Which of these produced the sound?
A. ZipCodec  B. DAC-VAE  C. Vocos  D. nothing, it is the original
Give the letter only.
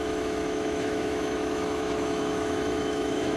B